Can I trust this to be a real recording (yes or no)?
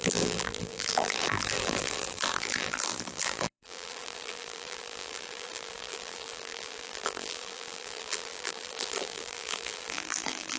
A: no